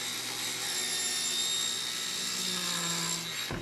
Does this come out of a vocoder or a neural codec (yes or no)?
no